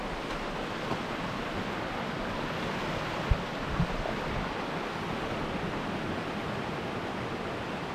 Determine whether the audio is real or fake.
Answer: real